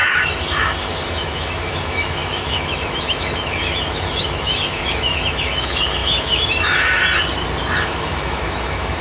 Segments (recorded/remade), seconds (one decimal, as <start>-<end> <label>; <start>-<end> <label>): 0.0-7.0 remade; 7.0-7.8 recorded; 7.8-9.0 remade